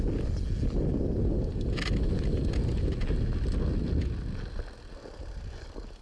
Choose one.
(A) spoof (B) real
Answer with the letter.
B